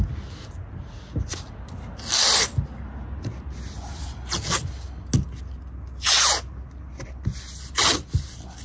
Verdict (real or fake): real